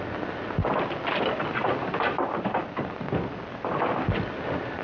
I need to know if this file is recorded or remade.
recorded